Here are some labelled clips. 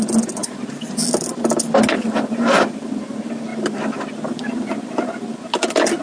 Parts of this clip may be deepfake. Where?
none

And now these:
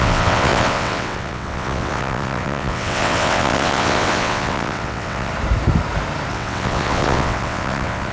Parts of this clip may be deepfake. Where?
0.0-5.3 (vocoder, WaveNeXt); 6.3-8.1

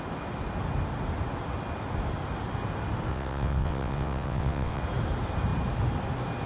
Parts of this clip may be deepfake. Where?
3.1-4.8 (vocoder, WaveNeXt)

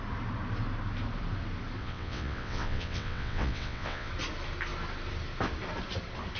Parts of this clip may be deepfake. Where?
1.8-4.1 (vocoder, WaveNeXt)

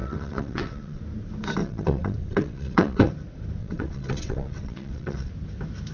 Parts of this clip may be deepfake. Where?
0.0-1.0 (vocoder, WaveNeXt); 1.6-3.1; 3.6-5.3

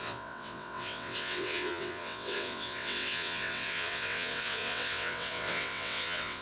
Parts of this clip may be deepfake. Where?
0.0-6.4 (vocoder, WaveNeXt)